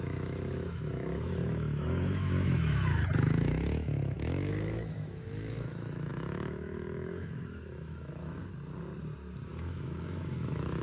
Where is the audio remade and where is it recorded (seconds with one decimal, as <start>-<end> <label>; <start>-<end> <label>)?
0.0-8.4 remade; 8.4-9.5 recorded; 9.5-10.8 remade